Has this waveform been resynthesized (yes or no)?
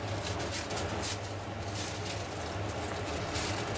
no